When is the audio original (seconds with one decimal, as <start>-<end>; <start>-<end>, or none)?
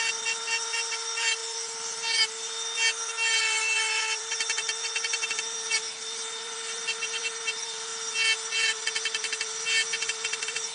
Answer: 1.4-3.4; 7.9-8.5